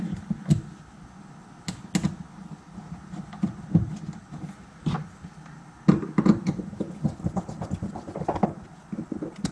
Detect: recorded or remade recorded